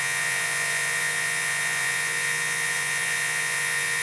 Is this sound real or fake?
fake